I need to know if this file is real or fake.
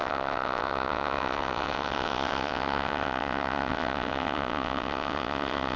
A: fake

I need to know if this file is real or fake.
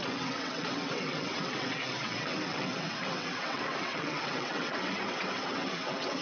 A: fake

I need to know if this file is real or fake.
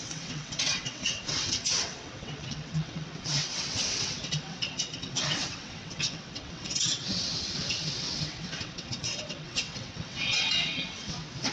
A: fake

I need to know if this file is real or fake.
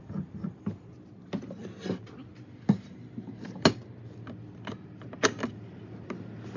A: real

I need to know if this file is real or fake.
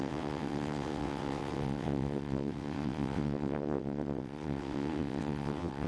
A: fake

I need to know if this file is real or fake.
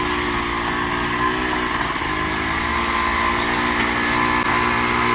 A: real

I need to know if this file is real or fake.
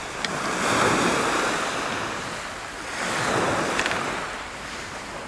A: real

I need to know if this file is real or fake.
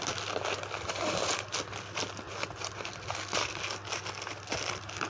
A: real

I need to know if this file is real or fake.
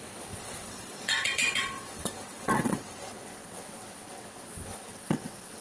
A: fake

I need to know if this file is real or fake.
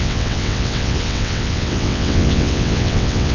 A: fake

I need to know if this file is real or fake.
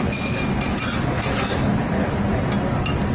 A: real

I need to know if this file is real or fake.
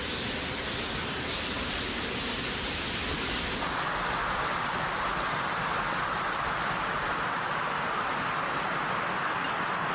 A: real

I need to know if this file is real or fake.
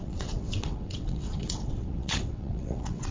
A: fake